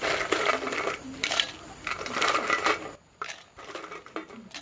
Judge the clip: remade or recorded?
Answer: recorded